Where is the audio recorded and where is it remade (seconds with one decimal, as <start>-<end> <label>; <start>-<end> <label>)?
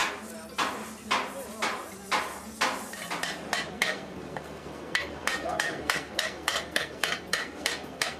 0.0-3.7 recorded; 3.7-8.2 remade